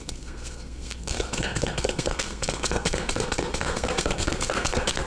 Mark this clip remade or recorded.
remade